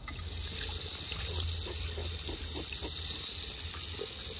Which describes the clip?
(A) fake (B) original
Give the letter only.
B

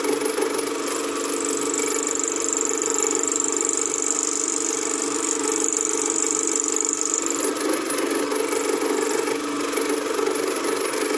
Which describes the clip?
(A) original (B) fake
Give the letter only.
A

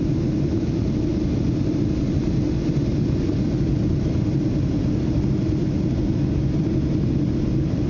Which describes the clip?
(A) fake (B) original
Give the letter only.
B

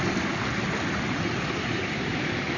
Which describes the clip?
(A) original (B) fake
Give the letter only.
A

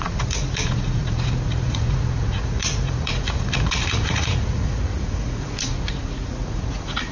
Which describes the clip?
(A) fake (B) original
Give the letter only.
A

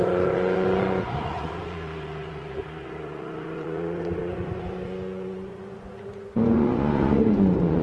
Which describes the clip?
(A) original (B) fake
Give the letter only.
B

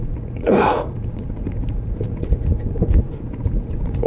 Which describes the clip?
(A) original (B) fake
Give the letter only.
B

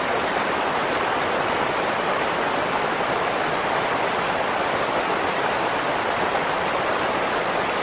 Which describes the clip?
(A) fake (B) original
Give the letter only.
B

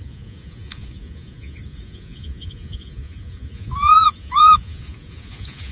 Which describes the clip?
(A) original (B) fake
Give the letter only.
B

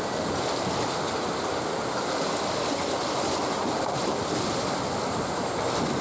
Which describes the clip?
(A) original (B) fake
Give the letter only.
A